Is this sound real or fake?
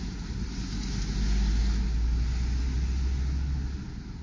real